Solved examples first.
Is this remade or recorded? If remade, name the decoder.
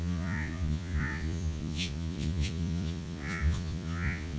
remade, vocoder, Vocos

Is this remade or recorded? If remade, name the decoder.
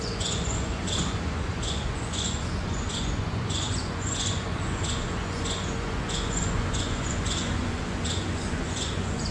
remade, vocoder, Vocos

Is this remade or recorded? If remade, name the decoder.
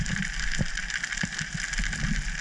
recorded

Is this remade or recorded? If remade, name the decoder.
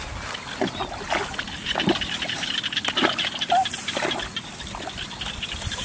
recorded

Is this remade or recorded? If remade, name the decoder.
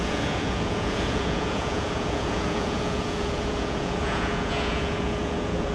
remade, vocoder, Vocos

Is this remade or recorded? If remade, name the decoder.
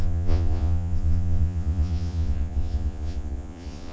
remade, vocoder, Vocos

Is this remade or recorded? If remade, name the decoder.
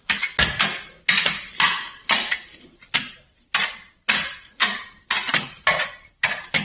recorded